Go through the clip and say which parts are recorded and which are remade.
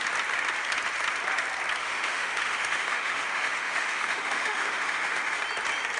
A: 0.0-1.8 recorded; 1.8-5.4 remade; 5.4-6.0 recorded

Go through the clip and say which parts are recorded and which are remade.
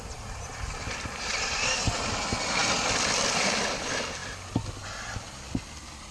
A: 0.0-6.1 recorded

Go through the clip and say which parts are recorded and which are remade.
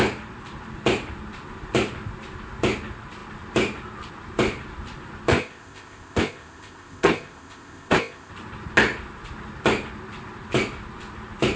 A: 0.0-5.3 recorded; 5.3-8.3 remade; 8.3-11.6 recorded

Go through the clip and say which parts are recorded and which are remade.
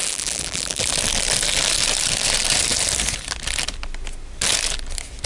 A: 0.0-0.8 remade; 0.8-5.3 recorded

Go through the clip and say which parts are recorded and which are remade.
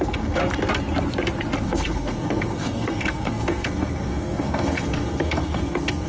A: 0.0-0.4 remade; 0.4-1.6 recorded; 1.6-6.1 remade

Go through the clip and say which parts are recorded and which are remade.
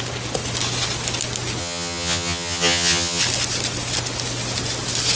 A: 0.0-1.6 recorded; 1.6-3.2 remade; 3.2-5.2 recorded